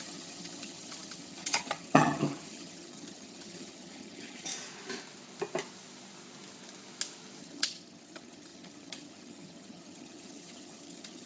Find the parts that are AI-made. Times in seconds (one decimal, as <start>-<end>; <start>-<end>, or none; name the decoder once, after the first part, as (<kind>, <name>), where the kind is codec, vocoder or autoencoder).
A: 0.0-4.5 (vocoder, HiFi-GAN); 7.4-11.3

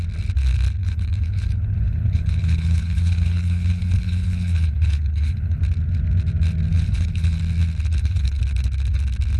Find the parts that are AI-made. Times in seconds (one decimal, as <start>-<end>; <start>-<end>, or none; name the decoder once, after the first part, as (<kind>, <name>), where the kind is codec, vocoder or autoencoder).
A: 0.8-5.6 (codec, HILCodec); 6.7-7.4; 7.9-8.4

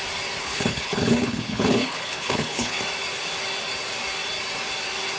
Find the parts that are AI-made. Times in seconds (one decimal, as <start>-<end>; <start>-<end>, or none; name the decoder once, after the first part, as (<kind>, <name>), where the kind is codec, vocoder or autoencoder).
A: 0.4-2.8 (codec, HILCodec)

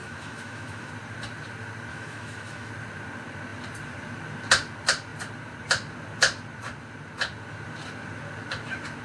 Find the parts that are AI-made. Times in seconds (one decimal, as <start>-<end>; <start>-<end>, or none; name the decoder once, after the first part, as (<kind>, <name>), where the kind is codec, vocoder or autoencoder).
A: 0.0-0.9 (autoencoder, DAC-VAE); 1.9-2.7

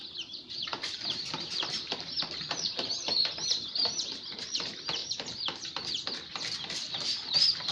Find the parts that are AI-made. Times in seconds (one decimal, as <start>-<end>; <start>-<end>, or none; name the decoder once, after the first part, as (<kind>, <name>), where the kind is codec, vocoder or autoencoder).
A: 0.0-5.0 (vocoder, BigVGAN v2)

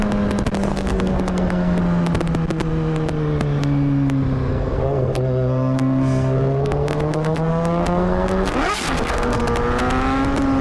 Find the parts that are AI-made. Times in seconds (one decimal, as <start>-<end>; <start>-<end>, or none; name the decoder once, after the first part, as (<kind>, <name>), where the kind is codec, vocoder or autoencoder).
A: 0.7-1.8 (codec, SNAC); 4.5-9.4

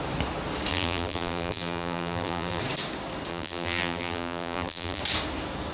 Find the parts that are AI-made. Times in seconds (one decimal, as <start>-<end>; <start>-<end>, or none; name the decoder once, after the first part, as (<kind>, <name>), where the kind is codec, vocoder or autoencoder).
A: 0.7-2.6 (vocoder, BigVGAN v2); 3.3-5.0

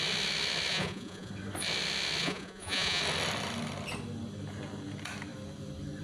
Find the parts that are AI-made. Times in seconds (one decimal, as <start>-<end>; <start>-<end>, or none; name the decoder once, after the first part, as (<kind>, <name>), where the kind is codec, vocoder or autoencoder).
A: 0.7-1.3 (vocoder, Vocos); 2.2-3.0